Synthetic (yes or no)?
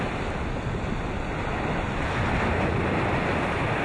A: no